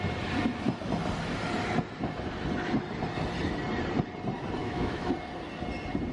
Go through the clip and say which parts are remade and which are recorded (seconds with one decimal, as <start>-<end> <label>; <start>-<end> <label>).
0.0-4.6 recorded; 4.6-5.1 remade; 5.1-6.1 recorded

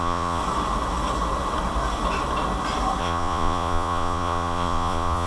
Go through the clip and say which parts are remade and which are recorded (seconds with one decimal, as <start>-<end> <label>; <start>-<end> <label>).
0.0-0.4 remade; 0.4-3.0 recorded; 3.0-5.3 remade

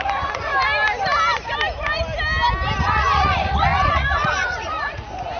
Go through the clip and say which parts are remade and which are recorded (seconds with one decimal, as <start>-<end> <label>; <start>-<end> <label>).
0.0-0.5 remade; 0.5-2.8 recorded; 2.8-5.4 remade

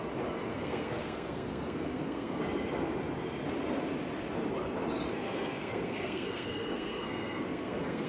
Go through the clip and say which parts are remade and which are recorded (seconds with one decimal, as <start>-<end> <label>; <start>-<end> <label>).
0.0-0.5 recorded; 0.5-2.4 remade; 2.4-5.1 recorded; 5.1-8.1 remade

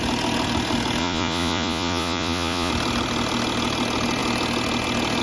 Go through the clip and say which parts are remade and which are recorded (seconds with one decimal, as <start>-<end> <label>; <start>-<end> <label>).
0.0-1.0 recorded; 1.0-2.7 remade; 2.7-5.2 recorded